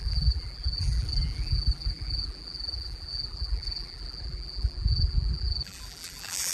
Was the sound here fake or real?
fake